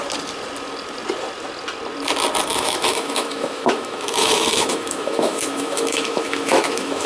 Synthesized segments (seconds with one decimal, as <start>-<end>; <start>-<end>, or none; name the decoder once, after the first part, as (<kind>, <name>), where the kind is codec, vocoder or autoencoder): 2.5-7.1 (autoencoder, DAC-VAE)